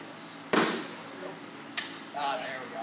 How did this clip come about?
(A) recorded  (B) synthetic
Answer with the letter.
A